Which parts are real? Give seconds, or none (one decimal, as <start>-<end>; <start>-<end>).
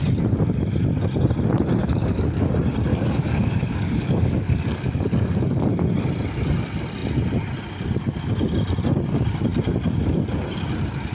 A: 0.0-1.8; 2.5-2.9; 5.7-11.1